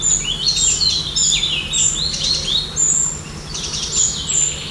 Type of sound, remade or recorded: recorded